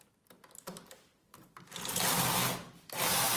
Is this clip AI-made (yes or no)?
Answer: no